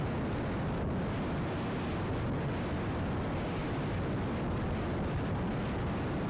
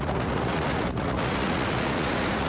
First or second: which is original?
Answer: first